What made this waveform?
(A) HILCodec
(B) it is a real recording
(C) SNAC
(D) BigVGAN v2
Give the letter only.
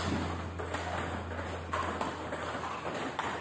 B